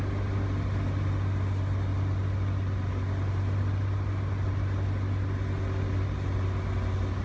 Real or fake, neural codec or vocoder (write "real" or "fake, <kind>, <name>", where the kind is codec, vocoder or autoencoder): real